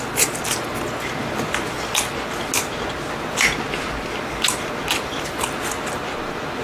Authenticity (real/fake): real